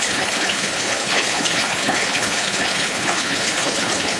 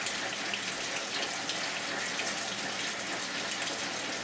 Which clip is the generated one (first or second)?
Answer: first